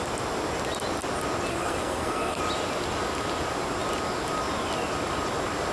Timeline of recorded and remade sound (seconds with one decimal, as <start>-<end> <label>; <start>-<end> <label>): 0.0-1.5 recorded; 1.5-2.4 remade; 2.4-5.7 recorded